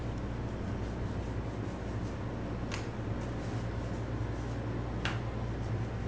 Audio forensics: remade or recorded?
recorded